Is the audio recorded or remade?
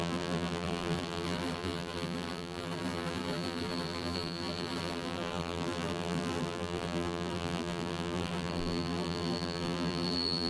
remade